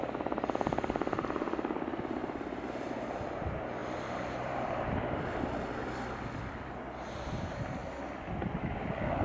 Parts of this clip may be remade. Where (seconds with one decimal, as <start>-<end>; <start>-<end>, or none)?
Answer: 2.2-2.9; 3.8-6.7; 7.8-8.3